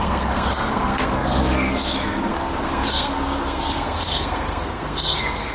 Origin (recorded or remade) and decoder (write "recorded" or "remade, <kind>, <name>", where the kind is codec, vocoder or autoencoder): remade, codec, SNAC